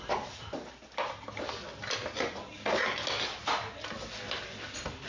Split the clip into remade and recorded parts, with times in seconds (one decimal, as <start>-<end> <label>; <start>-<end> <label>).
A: 0.0-5.1 recorded